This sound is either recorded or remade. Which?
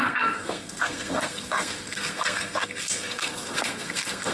remade